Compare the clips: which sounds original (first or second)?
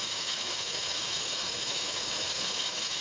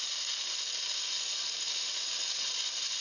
second